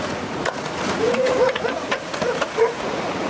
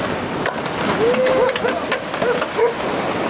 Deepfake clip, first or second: first